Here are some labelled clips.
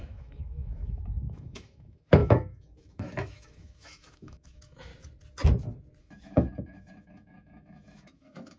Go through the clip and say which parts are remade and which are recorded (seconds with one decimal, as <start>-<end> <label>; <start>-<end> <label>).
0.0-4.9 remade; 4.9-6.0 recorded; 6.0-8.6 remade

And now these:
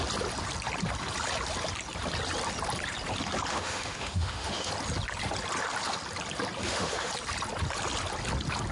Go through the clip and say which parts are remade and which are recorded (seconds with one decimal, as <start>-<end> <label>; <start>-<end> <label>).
0.0-3.5 recorded; 3.5-4.7 remade; 4.7-6.6 recorded; 6.6-7.1 remade; 7.1-8.7 recorded

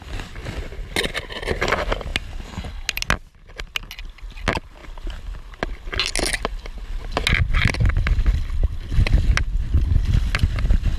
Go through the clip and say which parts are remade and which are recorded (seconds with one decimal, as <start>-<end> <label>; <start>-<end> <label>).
0.0-11.0 recorded

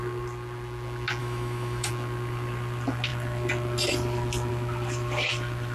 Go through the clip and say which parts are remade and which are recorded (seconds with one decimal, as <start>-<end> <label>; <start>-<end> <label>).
0.0-1.2 recorded; 1.2-1.9 remade; 1.9-5.7 recorded